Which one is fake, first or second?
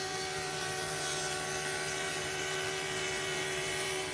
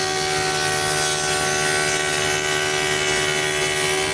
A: first